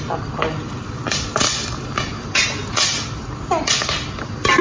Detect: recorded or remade recorded